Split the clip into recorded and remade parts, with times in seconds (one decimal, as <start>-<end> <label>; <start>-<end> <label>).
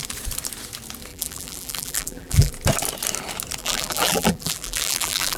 0.0-1.1 recorded; 1.1-2.5 remade; 2.5-3.6 recorded; 3.6-5.4 remade